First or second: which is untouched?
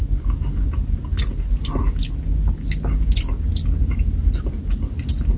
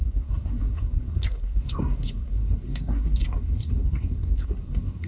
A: first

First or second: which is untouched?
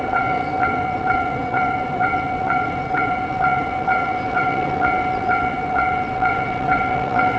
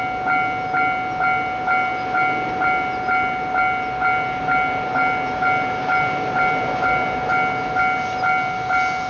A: second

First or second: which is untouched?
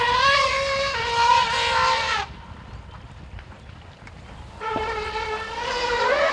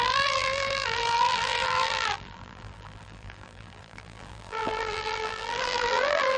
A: first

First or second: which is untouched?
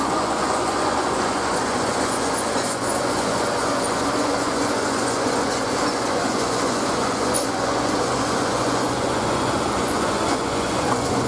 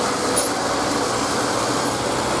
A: second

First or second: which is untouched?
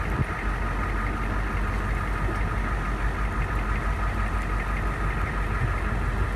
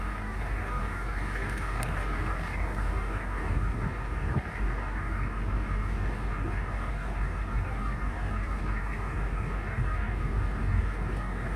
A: first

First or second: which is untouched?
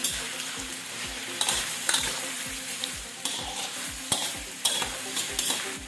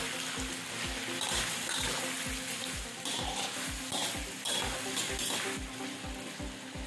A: second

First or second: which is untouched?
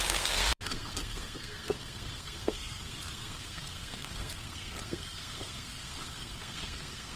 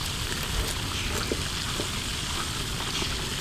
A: second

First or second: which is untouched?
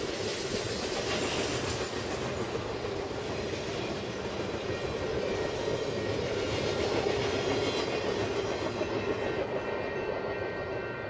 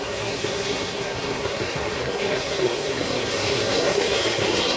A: first